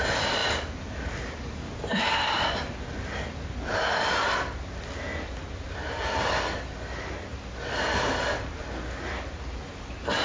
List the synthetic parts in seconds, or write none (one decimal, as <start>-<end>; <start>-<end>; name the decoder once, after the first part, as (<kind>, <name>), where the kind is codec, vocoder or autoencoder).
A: 0.4-1.0 (vocoder, BigVGAN v2); 1.9-2.6